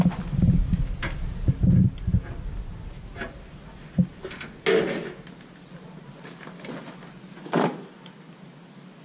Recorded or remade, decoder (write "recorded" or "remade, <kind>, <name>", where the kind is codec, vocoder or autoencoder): recorded